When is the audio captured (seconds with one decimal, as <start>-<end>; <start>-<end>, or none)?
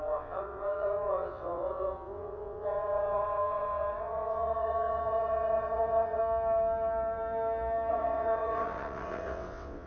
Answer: 6.2-7.9